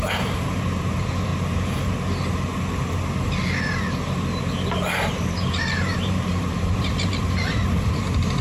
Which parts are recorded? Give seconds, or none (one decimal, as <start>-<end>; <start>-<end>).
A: 1.3-5.1